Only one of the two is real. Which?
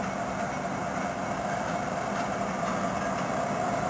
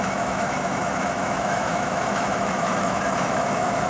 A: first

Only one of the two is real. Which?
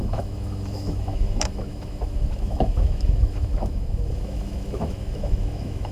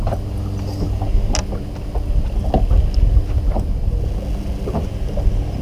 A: second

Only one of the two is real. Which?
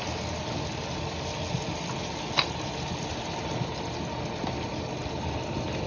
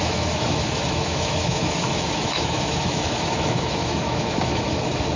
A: first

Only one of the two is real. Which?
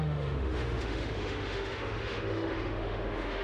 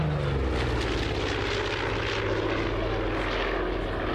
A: second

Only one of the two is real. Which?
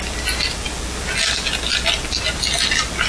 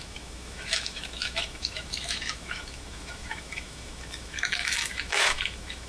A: first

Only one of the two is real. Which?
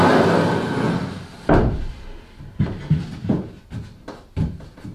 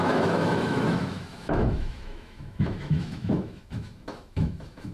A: first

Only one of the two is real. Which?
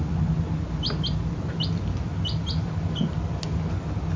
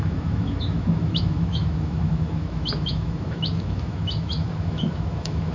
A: first